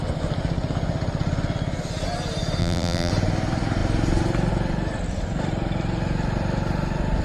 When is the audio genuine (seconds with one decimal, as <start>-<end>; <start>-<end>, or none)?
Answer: 0.0-2.6; 3.1-7.2